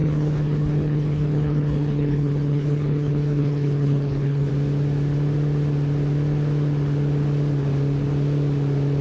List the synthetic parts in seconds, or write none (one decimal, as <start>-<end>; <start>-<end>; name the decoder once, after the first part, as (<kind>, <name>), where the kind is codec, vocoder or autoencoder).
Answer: 0.0-4.5 (codec, HILCodec)